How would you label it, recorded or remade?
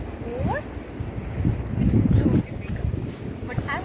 recorded